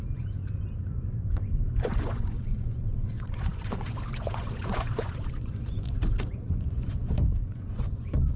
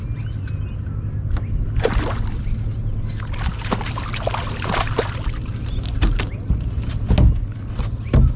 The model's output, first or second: first